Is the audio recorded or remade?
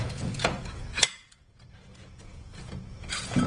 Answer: remade